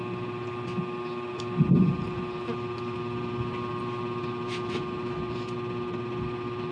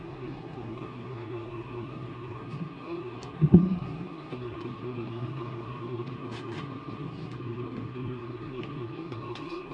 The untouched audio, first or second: first